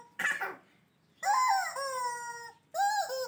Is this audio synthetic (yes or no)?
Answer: no